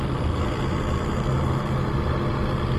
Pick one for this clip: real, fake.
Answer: real